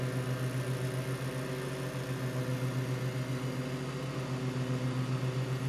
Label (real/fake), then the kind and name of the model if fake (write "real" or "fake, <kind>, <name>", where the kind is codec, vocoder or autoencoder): real